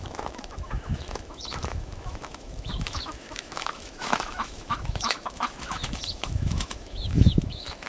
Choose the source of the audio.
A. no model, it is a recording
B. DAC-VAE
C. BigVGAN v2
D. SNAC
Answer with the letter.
B